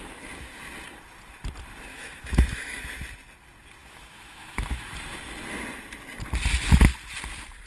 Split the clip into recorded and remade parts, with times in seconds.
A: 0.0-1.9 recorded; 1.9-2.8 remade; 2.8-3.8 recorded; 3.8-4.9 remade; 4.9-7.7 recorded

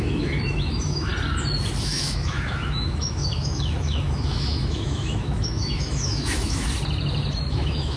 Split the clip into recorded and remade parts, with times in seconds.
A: 0.0-1.1 remade; 1.1-1.8 recorded; 1.8-6.7 remade; 6.7-7.5 recorded; 7.5-8.0 remade

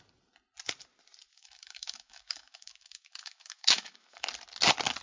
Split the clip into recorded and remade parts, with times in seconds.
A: 0.0-1.3 recorded; 1.3-4.3 remade; 4.3-5.0 recorded